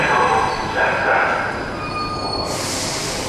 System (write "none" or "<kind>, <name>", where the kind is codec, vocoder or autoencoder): none